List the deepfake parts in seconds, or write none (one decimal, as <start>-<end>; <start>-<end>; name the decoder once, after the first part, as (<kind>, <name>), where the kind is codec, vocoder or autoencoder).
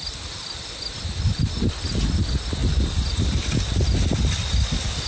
none